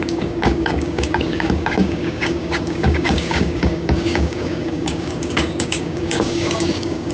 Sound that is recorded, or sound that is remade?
remade